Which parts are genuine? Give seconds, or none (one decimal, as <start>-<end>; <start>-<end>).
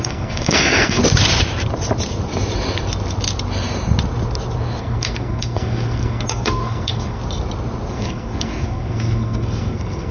1.0-4.8; 7.2-7.9